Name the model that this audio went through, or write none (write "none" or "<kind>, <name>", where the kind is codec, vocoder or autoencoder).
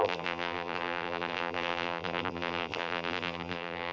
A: vocoder, BigVGAN v2